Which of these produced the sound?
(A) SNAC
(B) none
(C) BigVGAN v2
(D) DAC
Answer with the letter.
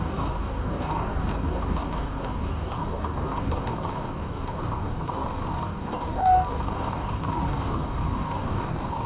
D